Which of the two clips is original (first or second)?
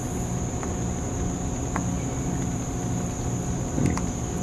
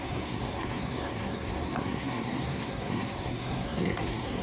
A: first